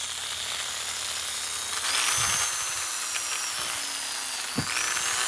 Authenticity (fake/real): real